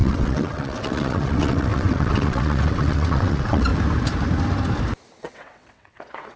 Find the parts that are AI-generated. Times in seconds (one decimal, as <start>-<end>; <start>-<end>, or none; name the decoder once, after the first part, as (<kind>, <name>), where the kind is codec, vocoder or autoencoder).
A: 0.0-3.7 (vocoder, WaveNeXt); 5.2-6.4